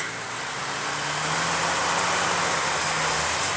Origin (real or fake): real